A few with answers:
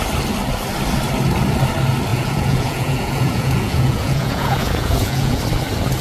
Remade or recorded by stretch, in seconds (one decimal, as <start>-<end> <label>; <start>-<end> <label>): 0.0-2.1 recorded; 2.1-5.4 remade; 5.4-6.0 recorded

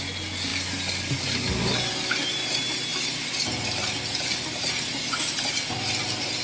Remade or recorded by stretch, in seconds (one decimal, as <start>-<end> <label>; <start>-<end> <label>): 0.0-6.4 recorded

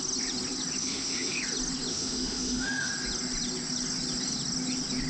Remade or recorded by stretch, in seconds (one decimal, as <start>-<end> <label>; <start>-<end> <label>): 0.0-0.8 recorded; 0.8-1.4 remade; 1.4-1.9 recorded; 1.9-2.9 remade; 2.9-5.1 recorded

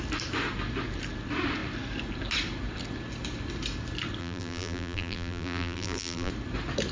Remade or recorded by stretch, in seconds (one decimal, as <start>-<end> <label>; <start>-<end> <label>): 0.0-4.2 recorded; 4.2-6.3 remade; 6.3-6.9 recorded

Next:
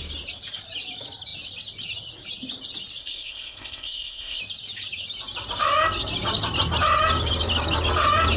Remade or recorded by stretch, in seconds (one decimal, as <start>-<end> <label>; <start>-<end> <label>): 0.0-3.0 recorded; 3.0-4.4 remade; 4.4-8.4 recorded

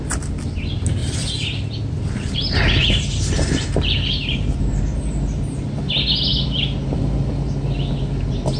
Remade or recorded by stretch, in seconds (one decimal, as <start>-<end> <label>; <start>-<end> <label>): 0.0-1.0 recorded; 1.0-4.8 remade; 4.8-8.6 recorded